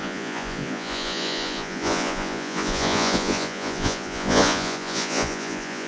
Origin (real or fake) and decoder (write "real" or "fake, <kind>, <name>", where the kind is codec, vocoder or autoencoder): fake, vocoder, Vocos